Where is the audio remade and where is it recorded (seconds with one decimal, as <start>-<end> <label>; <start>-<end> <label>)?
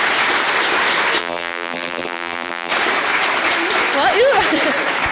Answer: 0.0-1.2 recorded; 1.2-2.7 remade; 2.7-5.1 recorded